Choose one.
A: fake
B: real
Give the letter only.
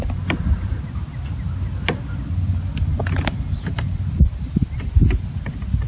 B